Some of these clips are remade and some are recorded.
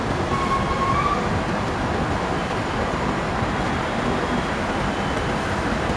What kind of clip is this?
recorded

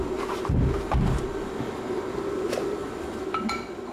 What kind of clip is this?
recorded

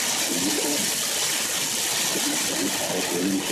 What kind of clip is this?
recorded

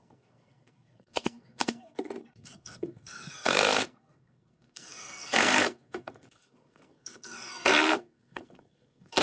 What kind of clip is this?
remade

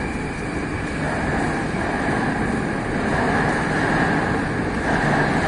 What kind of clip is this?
recorded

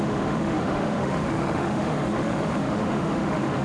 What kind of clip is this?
remade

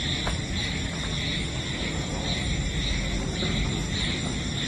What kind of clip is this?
recorded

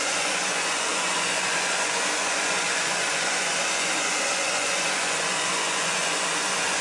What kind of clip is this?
remade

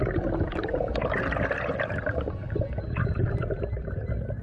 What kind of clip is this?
recorded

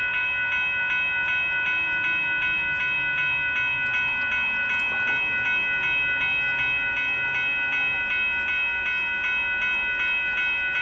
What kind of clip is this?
recorded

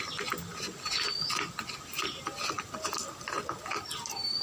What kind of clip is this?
recorded